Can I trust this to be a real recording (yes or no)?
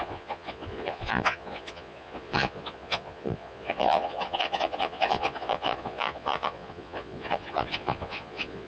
no